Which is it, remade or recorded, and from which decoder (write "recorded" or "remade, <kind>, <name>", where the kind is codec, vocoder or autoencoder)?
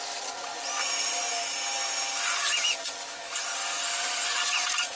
recorded